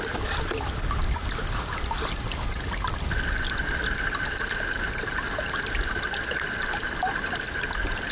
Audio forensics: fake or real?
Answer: real